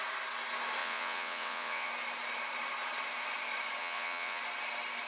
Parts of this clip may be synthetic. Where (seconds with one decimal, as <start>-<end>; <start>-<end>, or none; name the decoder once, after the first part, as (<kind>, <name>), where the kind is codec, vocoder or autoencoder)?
0.8-1.9 (vocoder, WaveNeXt); 3.8-4.4